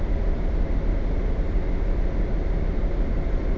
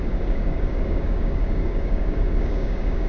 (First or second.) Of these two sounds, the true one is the first